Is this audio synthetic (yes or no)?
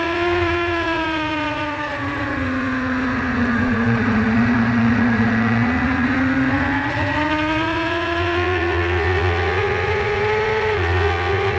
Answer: yes